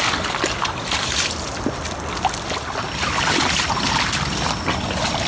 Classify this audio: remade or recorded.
recorded